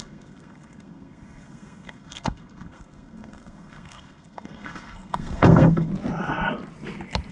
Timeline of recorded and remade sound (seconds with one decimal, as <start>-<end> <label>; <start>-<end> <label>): 0.0-5.9 remade; 5.9-7.3 recorded